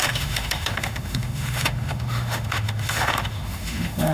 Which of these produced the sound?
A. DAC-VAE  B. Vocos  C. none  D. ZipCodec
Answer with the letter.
A